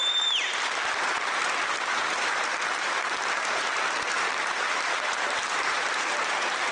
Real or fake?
fake